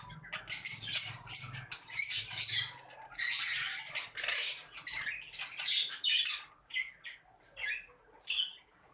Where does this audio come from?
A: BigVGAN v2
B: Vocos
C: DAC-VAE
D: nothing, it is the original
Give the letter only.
A